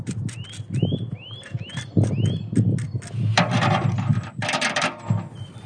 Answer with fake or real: real